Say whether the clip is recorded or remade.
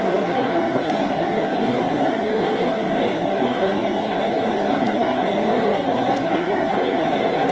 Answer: remade